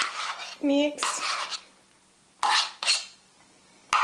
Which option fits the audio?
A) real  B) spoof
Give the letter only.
A